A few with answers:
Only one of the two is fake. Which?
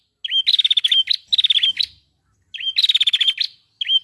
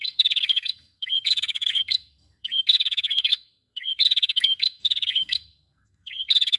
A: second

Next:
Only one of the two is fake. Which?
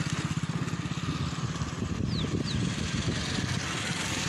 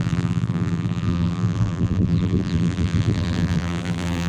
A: second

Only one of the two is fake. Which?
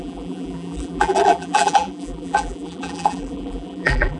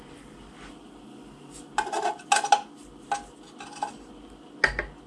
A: first